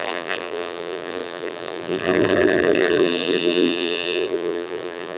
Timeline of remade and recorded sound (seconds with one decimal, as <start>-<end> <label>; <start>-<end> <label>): 0.0-5.2 remade